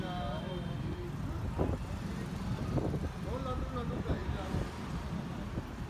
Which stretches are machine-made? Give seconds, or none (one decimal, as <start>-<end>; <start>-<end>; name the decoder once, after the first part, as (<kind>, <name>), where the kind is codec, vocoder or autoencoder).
none